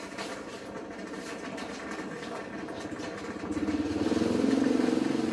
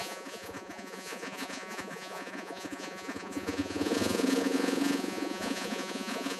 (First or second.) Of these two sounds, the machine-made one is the second